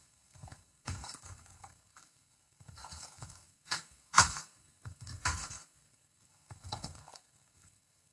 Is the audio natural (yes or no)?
no